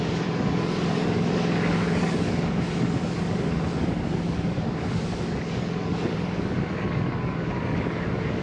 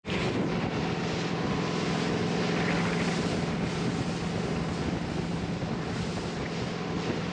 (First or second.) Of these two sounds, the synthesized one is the first